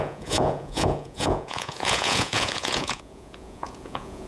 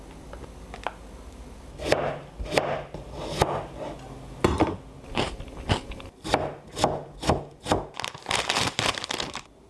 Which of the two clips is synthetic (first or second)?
first